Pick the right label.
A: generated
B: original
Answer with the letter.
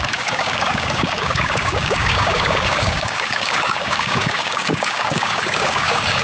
A